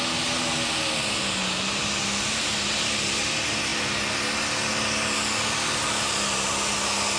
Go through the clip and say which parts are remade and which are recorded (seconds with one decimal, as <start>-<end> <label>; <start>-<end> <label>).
0.0-7.2 recorded